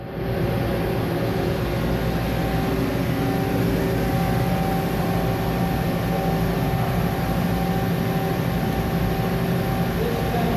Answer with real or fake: real